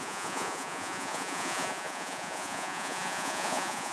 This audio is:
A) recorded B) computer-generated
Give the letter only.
B